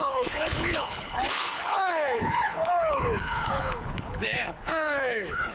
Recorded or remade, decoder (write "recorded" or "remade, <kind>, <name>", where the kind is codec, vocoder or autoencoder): remade, codec, HILCodec